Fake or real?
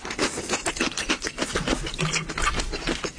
real